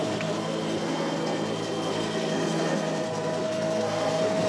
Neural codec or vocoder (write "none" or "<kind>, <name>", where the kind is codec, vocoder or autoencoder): codec, SNAC